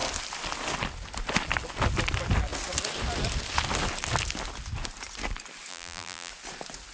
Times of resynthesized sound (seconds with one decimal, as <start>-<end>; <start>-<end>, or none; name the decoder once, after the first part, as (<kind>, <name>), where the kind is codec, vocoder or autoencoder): 5.7-6.3 (vocoder, BigVGAN v2)